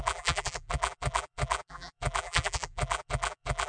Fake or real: fake